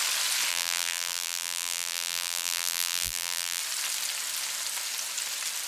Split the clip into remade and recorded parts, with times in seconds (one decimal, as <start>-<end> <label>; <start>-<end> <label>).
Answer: 0.0-0.5 recorded; 0.5-3.6 remade; 3.6-5.7 recorded